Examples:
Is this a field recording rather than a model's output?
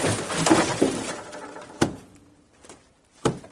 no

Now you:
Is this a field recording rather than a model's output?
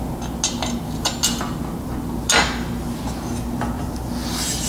yes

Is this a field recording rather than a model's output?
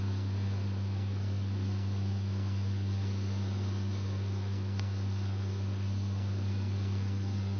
no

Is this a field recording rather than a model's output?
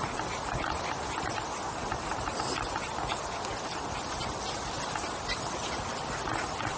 yes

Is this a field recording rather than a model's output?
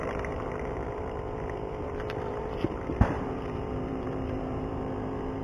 no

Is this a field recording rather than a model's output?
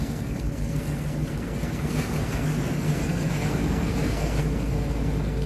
no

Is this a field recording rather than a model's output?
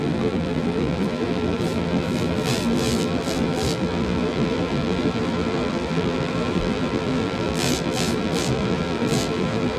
no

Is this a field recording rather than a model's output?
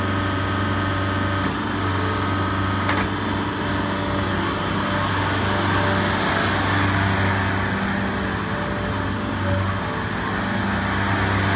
yes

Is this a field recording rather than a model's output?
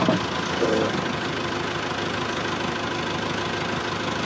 yes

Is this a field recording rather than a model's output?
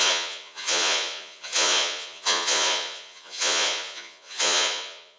no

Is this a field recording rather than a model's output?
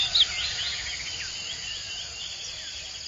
yes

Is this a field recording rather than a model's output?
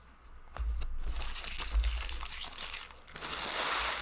yes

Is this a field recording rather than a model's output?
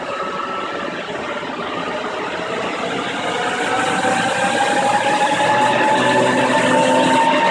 yes